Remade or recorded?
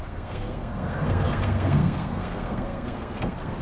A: remade